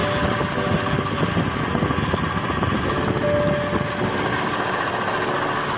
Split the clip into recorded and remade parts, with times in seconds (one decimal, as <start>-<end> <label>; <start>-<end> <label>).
0.0-5.8 recorded